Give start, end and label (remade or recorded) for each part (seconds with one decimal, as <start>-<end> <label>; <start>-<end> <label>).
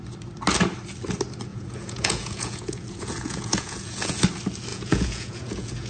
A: 0.0-1.5 recorded; 1.5-4.2 remade; 4.2-4.7 recorded; 4.7-5.9 remade